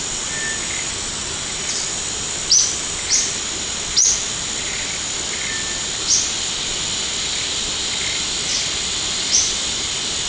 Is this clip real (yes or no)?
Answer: yes